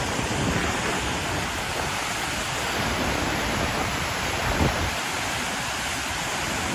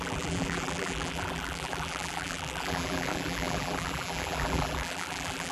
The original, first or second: first